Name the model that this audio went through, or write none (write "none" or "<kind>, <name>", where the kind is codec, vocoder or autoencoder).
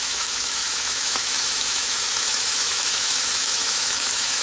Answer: autoencoder, DAC-VAE